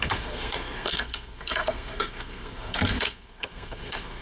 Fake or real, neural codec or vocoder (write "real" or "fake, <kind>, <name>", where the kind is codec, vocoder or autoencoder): fake, codec, SNAC